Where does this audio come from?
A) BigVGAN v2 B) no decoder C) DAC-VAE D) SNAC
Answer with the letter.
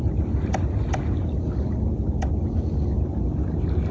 B